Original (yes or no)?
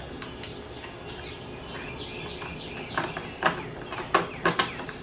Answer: yes